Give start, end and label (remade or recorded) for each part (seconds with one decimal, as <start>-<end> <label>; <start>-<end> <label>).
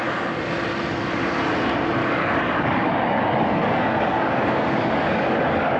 0.0-2.0 recorded; 2.0-5.8 remade